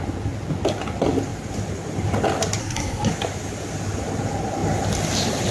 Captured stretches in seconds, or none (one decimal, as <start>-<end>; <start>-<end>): 0.0-2.6; 3.1-5.5